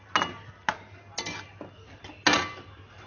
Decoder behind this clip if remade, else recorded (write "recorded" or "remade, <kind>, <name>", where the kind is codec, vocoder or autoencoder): recorded